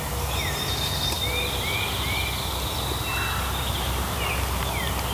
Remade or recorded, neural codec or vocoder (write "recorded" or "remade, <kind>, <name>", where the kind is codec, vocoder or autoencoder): recorded